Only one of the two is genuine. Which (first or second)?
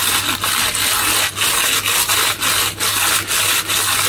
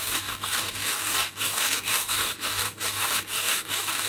first